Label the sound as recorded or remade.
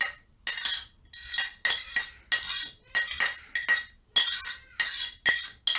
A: recorded